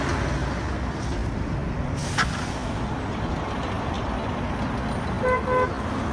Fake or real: real